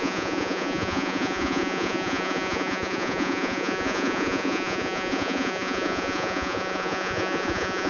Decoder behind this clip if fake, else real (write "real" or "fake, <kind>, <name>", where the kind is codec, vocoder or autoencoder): fake, vocoder, Vocos